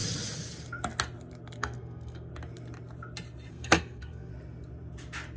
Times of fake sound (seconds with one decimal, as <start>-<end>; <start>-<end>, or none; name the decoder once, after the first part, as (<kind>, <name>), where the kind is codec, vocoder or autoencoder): 1.6-2.3 (codec, SNAC); 3.5-4.3